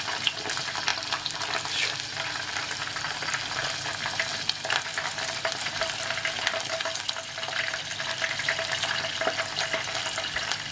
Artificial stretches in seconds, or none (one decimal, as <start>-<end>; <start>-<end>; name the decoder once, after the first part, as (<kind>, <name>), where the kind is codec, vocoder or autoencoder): none